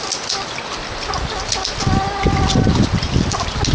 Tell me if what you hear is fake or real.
real